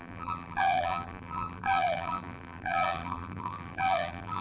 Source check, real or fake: fake